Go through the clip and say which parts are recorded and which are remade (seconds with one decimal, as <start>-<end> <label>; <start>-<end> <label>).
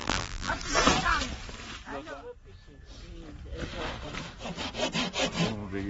0.0-0.5 remade; 0.5-5.9 recorded